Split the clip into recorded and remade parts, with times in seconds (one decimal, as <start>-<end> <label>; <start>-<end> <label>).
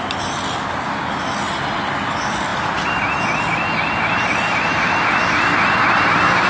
0.0-6.5 recorded